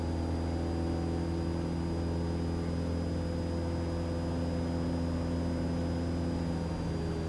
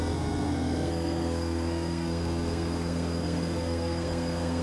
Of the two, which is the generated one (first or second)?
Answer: second